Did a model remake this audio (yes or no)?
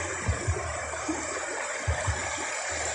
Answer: no